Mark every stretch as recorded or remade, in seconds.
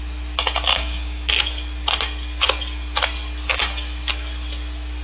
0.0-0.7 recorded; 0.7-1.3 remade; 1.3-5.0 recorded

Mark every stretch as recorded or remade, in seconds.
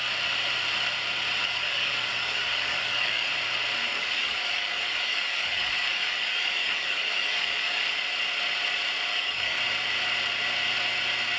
0.0-1.4 recorded; 1.4-3.3 remade; 3.3-3.9 recorded; 3.9-7.8 remade; 7.8-9.1 recorded; 9.1-9.6 remade; 9.6-11.4 recorded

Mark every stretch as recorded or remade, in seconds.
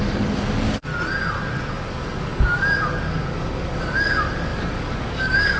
0.0-0.9 remade; 0.9-1.7 recorded; 1.7-5.6 remade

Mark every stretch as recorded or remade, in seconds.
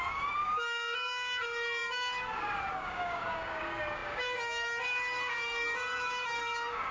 0.0-6.9 remade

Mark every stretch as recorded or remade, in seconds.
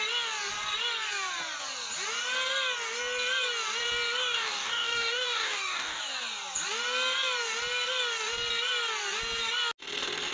0.0-4.2 recorded; 4.2-6.0 remade; 6.0-10.3 recorded